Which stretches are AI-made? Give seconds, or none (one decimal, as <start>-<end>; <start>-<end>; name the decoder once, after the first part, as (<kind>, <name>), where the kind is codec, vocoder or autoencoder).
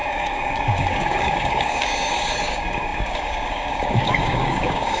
0.0-5.0 (codec, DAC)